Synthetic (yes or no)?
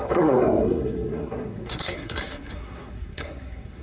yes